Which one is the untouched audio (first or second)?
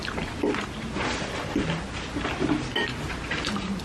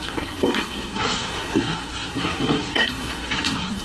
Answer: first